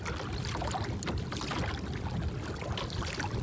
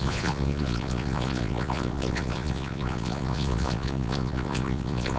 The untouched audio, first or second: first